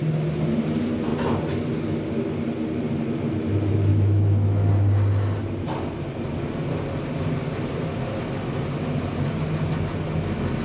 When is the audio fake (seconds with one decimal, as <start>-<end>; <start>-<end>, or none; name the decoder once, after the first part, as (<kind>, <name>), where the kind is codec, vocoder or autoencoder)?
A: 3.9-4.7 (autoencoder, DAC-VAE)